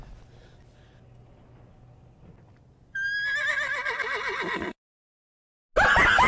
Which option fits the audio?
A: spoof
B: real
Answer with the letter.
B